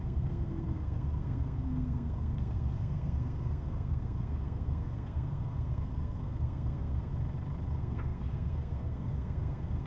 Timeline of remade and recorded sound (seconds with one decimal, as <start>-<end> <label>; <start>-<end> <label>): 0.0-7.1 remade; 7.1-7.7 recorded; 7.7-9.9 remade